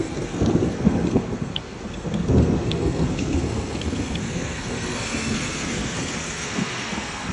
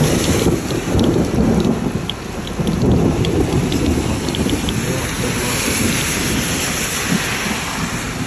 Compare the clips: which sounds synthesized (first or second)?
first